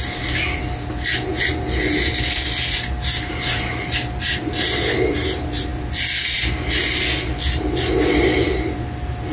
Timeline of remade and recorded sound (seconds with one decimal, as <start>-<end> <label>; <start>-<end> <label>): 0.0-9.3 recorded